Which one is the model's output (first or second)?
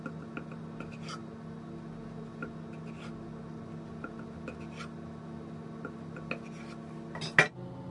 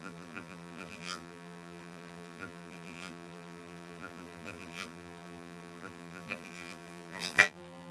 second